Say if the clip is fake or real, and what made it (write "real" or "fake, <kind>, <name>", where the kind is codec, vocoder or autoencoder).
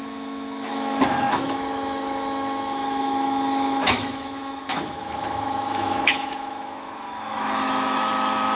fake, autoencoder, DAC-VAE